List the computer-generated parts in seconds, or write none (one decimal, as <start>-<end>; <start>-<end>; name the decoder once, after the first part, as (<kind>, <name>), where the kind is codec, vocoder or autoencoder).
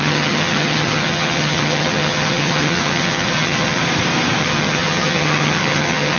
0.0-3.8 (vocoder, HiFi-GAN); 4.4-6.2